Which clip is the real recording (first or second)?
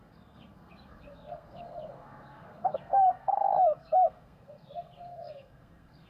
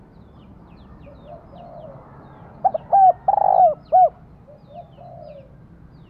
second